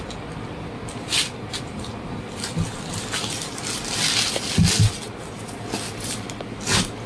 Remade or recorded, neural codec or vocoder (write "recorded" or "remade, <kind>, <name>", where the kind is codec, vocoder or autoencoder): recorded